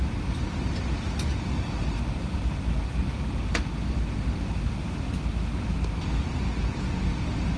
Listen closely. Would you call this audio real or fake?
real